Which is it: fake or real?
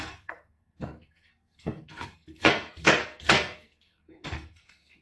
fake